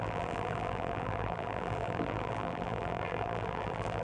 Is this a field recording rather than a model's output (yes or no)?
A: no